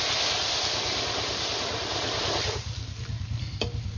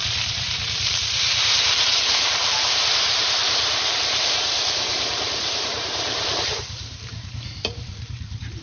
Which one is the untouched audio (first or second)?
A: first